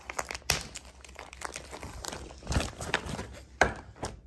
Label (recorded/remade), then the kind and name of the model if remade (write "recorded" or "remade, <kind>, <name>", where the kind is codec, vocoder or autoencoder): remade, vocoder, BigVGAN v2